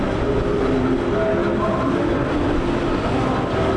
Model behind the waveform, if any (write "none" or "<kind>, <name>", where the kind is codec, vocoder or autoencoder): none